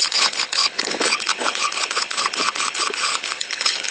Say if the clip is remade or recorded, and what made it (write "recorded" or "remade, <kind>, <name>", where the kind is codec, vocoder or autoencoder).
remade, codec, HILCodec